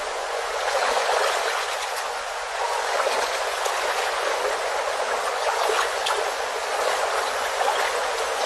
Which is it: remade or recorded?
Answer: remade